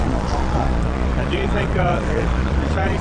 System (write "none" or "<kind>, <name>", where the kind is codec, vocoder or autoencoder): vocoder, Vocos